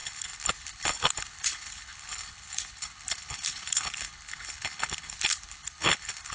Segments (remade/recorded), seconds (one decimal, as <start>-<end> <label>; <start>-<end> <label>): 0.0-6.3 remade